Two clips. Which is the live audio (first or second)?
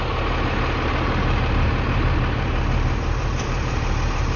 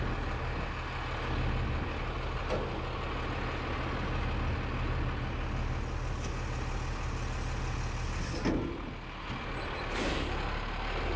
second